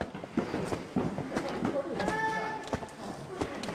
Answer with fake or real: real